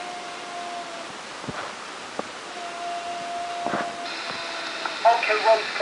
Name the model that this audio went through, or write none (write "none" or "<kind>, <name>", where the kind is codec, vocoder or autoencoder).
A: none